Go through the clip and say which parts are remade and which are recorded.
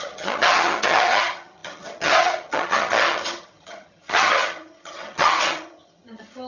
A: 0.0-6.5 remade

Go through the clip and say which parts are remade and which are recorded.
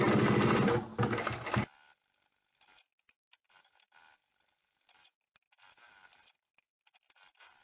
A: 0.0-7.6 recorded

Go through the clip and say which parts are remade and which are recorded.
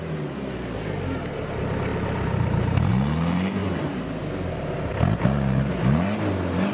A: 0.0-6.7 recorded